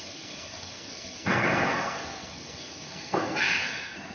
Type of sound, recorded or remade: remade